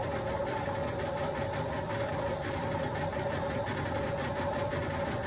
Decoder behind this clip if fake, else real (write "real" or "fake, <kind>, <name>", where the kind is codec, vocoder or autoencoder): fake, vocoder, BigVGAN v2